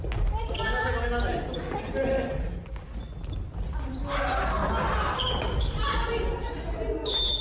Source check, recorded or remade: recorded